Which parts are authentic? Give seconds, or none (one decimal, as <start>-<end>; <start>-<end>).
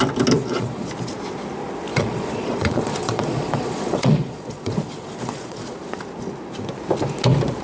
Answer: 0.0-0.4; 0.9-1.9; 5.6-7.6